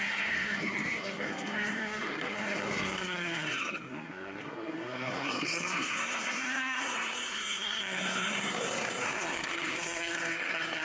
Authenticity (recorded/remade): remade